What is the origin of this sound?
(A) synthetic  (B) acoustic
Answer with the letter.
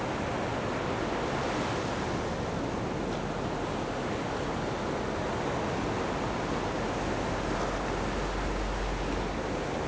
B